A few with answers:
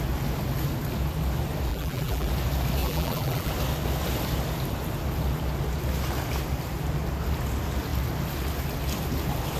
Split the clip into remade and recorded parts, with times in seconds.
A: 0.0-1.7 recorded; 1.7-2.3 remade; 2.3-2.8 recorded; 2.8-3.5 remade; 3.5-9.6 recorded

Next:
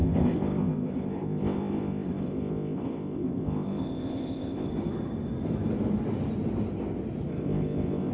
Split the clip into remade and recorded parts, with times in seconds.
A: 0.0-4.7 remade; 4.7-7.3 recorded; 7.3-8.1 remade